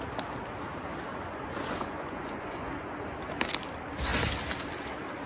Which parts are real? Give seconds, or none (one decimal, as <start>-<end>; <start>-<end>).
0.0-1.1; 3.2-5.3